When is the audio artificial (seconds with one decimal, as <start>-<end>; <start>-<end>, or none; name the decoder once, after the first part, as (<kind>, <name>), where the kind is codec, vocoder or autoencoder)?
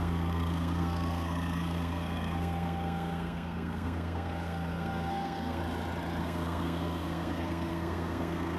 0.0-5.6 (codec, SNAC); 6.2-8.6